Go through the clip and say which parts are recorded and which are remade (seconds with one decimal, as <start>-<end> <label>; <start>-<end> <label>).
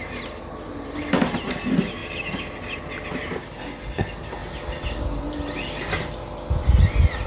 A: 0.0-7.3 recorded